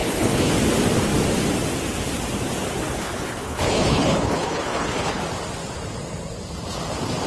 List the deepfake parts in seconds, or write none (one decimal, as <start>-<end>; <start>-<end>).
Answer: 0.0-0.5; 3.0-5.2